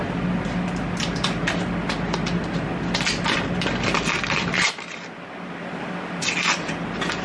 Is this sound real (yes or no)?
yes